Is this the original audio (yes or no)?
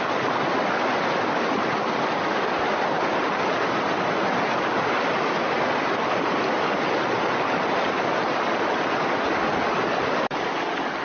yes